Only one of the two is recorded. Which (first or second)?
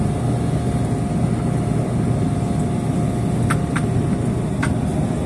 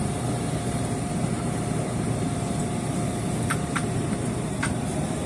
first